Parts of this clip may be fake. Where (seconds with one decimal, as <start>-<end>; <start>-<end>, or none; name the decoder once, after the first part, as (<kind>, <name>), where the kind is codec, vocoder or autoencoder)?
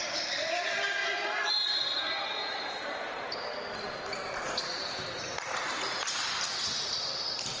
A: none